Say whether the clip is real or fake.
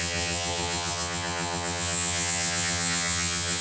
fake